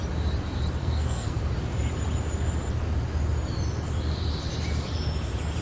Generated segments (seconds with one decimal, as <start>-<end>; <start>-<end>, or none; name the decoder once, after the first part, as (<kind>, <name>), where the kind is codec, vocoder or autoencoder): 0.8-1.4 (codec, SNAC)